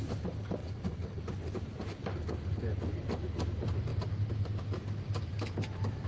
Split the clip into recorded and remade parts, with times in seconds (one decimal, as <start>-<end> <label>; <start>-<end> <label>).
0.0-0.6 recorded; 0.6-1.2 remade; 1.2-6.1 recorded